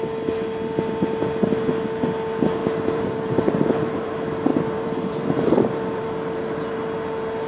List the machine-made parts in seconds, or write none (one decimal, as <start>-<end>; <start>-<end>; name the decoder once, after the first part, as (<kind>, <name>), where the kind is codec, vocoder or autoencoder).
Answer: 2.6-4.1 (vocoder, BigVGAN v2); 4.5-6.7

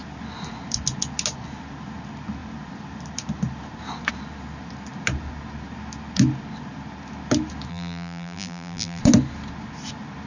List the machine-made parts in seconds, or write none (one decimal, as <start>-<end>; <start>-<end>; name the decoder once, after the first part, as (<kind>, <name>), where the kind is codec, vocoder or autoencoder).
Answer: 7.7-9.0 (vocoder, BigVGAN v2)

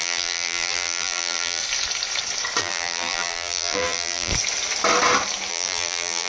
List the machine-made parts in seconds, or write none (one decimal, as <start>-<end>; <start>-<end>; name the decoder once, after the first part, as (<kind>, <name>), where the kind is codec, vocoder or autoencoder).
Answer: 0.0-1.6 (vocoder, BigVGAN v2); 2.6-4.3; 5.5-6.3

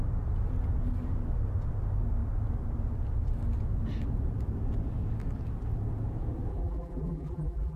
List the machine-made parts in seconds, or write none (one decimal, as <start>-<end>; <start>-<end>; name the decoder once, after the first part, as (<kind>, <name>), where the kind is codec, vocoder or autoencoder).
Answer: 6.5-7.8 (vocoder, BigVGAN v2)

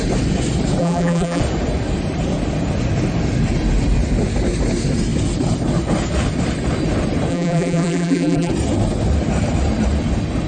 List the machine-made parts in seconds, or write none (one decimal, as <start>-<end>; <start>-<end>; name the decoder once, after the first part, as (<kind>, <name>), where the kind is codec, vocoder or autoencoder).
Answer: 0.8-1.4 (vocoder, BigVGAN v2); 7.3-8.5

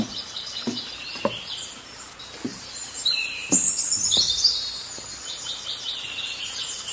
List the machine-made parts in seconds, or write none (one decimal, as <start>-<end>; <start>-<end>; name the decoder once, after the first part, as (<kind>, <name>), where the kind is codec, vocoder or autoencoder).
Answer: 2.5-3.7 (vocoder, BigVGAN v2)

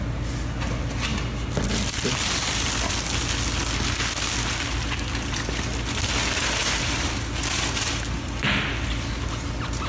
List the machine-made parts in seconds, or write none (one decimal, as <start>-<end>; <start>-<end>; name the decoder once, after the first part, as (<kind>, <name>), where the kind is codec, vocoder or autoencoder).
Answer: 6.6-7.2 (vocoder, BigVGAN v2)

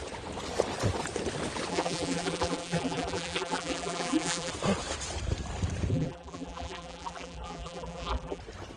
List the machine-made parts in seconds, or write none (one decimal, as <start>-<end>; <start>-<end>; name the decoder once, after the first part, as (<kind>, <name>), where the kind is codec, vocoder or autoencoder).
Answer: 1.7-4.5 (vocoder, BigVGAN v2); 5.9-8.4